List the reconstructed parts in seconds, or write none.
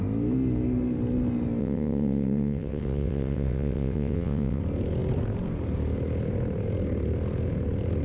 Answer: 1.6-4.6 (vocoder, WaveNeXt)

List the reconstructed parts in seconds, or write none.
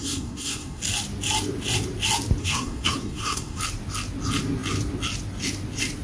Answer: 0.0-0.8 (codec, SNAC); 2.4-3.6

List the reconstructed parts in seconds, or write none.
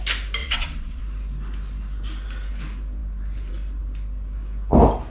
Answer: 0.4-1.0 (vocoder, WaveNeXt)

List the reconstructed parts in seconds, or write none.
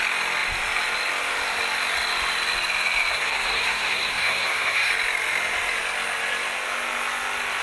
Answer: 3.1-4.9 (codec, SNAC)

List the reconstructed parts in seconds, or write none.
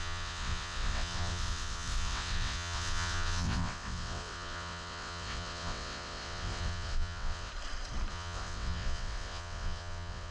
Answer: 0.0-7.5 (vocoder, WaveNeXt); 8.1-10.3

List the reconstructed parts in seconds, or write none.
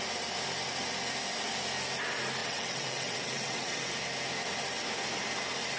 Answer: 2.4-3.9 (vocoder, WaveNeXt)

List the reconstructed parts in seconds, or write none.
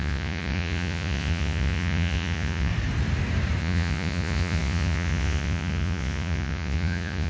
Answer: 0.0-2.7 (vocoder, Vocos); 3.6-7.3